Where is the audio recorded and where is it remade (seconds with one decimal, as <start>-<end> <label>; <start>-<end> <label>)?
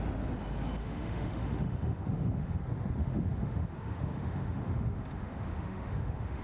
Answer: 0.0-0.8 recorded; 0.8-2.6 remade; 2.6-3.0 recorded; 3.0-6.4 remade